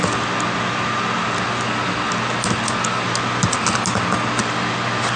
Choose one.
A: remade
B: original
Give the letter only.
B